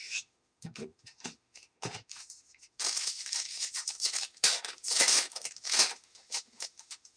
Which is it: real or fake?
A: fake